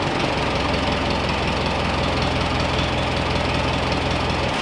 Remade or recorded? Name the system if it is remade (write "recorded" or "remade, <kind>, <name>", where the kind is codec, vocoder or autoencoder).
recorded